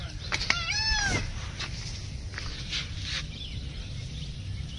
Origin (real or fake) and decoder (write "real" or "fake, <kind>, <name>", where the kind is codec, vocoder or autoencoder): real